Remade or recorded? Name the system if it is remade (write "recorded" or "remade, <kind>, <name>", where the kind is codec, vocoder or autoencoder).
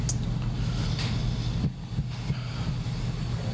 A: recorded